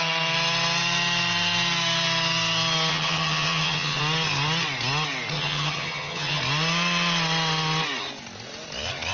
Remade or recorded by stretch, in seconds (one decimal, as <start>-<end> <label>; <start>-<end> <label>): 0.0-2.9 recorded; 2.9-4.0 remade; 4.0-5.3 recorded; 5.3-6.4 remade; 6.4-9.1 recorded